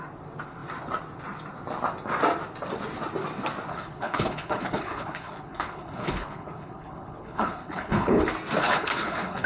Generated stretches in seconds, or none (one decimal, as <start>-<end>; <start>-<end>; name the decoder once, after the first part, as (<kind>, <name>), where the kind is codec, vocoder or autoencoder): 3.7-8.2 (codec, HILCodec); 8.6-9.5